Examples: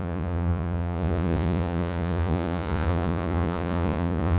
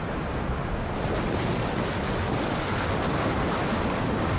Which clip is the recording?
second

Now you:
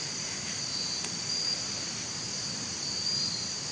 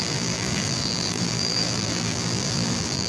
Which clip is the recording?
first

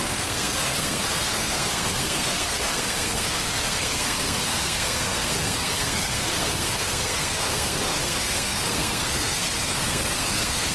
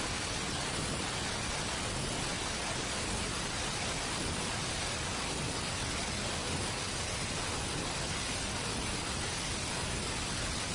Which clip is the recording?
second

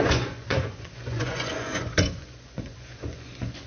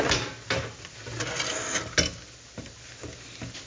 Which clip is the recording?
second